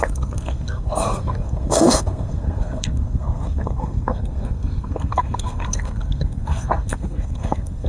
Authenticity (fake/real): fake